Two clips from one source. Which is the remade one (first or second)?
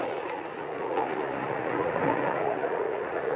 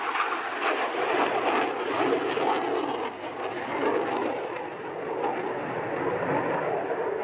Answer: first